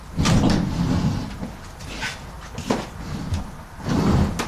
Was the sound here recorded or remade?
recorded